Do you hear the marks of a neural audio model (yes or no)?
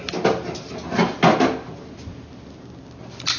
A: no